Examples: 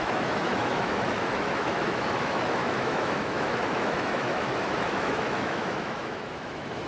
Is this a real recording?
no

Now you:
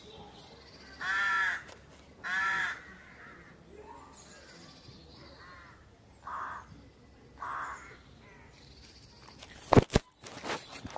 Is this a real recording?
yes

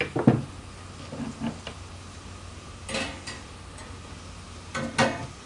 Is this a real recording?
yes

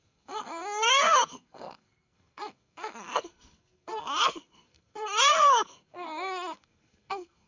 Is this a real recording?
no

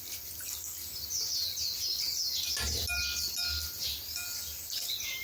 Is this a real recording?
yes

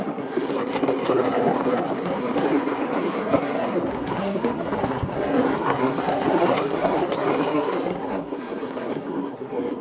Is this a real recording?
no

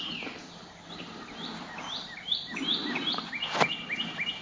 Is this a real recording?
yes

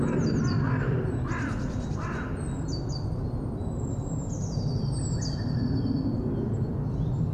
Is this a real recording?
yes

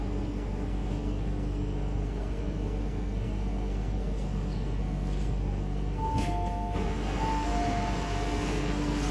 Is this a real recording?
no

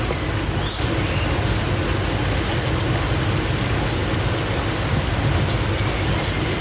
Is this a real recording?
yes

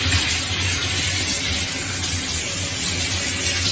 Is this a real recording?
yes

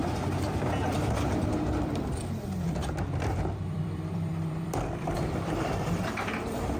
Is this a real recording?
no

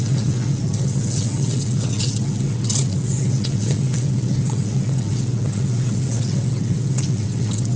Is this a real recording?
no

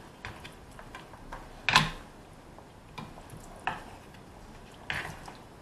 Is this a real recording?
yes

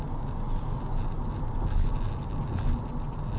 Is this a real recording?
yes